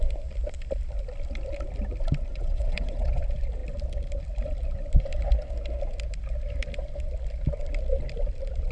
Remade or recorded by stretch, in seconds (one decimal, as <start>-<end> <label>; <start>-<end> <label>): 0.0-2.3 recorded; 2.3-3.2 remade; 3.2-8.7 recorded